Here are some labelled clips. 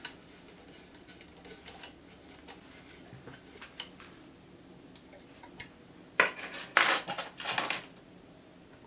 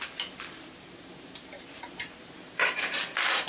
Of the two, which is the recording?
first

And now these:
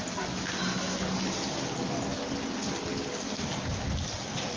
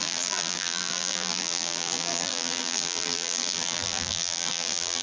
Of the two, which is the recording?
first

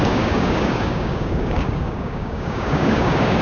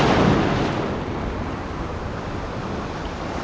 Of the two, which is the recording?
second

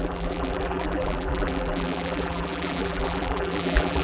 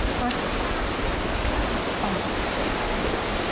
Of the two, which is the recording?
second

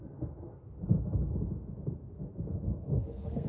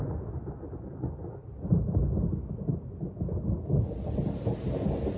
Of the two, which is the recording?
second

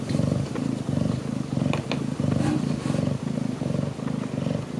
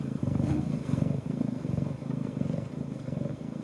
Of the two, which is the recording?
first